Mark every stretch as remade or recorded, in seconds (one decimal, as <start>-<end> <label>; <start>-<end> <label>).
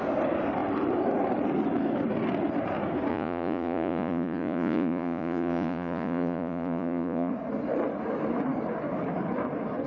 0.0-3.1 recorded; 3.1-7.3 remade; 7.3-9.9 recorded